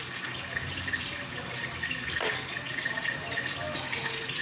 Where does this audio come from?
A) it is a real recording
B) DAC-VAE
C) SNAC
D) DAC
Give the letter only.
A